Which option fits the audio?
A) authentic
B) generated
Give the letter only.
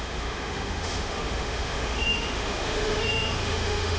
B